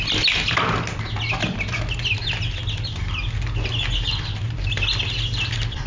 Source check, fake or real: real